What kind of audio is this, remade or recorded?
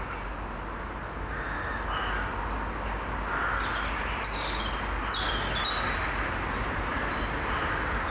recorded